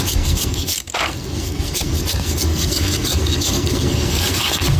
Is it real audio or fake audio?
fake